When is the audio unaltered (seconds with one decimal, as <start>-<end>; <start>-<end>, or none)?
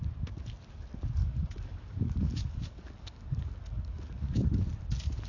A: 0.0-1.2; 4.4-5.3